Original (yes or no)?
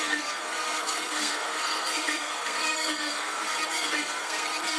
no